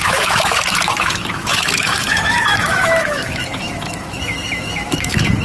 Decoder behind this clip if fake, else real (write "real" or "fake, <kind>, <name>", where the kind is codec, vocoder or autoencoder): fake, autoencoder, DAC-VAE